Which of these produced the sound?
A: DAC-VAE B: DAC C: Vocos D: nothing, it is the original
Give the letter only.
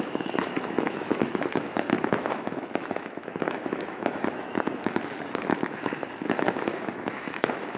A